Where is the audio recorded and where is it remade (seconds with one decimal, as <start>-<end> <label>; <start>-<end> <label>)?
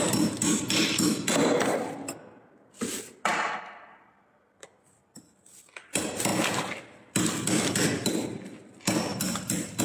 0.0-3.3 recorded; 3.3-4.5 remade; 4.5-9.1 recorded; 9.1-9.8 remade